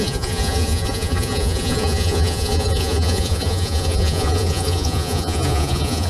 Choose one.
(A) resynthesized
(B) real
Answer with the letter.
A